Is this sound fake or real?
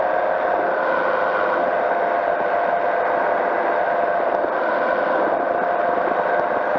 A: real